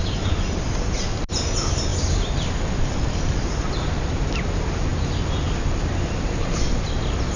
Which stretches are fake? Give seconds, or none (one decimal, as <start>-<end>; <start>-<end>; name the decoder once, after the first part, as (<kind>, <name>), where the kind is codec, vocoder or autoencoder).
0.0-0.8 (vocoder, BigVGAN v2)